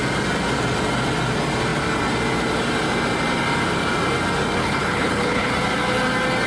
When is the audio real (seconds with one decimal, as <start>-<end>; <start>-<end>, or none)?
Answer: 0.0-4.6; 5.5-6.5